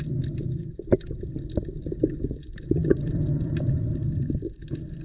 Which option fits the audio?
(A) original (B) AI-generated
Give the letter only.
A